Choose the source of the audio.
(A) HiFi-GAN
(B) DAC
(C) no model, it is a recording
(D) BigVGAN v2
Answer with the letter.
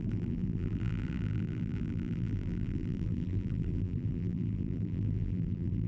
D